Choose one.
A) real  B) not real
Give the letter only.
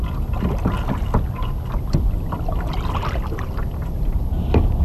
A